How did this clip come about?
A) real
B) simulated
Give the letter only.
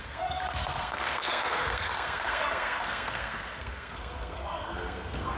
B